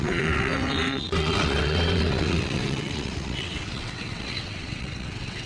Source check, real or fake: fake